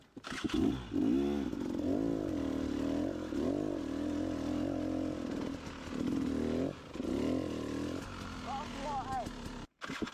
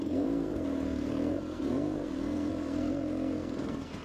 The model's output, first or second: second